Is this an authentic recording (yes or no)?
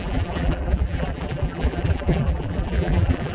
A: no